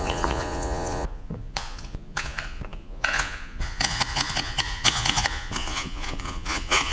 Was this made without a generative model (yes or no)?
no